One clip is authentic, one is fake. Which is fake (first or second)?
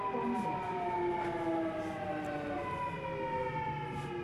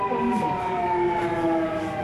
second